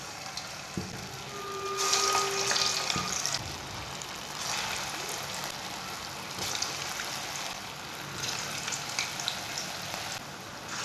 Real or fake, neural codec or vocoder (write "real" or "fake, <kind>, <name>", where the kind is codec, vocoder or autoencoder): real